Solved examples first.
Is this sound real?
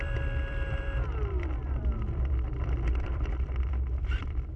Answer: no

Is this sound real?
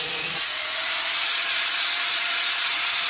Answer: no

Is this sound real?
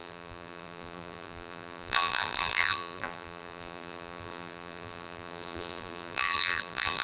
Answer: no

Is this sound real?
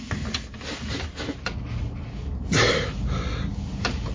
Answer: yes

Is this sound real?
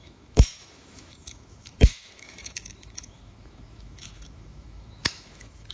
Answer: no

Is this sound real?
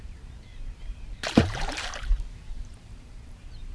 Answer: no